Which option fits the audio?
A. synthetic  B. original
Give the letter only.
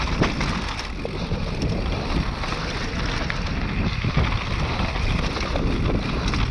B